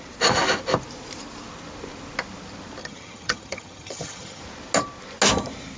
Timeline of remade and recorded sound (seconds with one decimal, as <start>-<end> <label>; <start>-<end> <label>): 0.0-2.8 recorded; 2.8-4.4 remade; 4.4-5.8 recorded